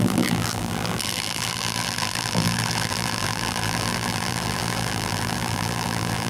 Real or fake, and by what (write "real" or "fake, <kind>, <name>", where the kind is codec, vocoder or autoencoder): fake, vocoder, BigVGAN v2